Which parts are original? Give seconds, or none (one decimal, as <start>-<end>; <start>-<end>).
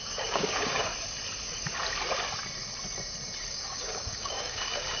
0.9-3.4